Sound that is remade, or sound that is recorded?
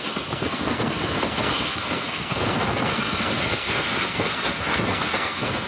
remade